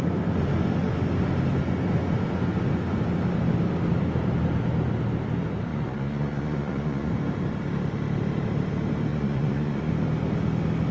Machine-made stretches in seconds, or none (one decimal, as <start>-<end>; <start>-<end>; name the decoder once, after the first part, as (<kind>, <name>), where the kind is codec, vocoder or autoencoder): 5.7-7.1 (vocoder, Vocos); 9.1-9.9